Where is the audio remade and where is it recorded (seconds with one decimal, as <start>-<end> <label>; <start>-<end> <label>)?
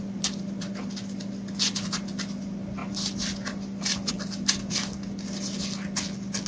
0.0-6.5 recorded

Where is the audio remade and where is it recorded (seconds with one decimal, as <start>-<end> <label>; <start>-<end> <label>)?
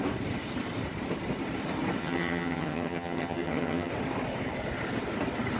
0.0-2.0 recorded; 2.0-3.9 remade; 3.9-5.6 recorded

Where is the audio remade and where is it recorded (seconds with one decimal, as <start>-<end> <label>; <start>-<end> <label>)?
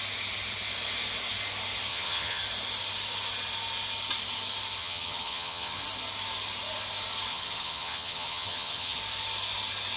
0.0-1.9 recorded; 1.9-2.4 remade; 2.4-4.8 recorded; 4.8-5.8 remade; 5.8-7.3 recorded; 7.3-9.0 remade; 9.0-10.0 recorded